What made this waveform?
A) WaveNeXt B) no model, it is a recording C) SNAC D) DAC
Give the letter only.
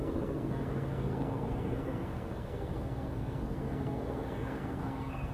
C